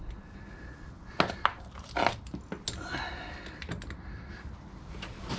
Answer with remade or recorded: recorded